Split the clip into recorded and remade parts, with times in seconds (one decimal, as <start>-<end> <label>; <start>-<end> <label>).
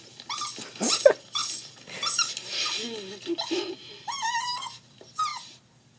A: 0.0-6.0 recorded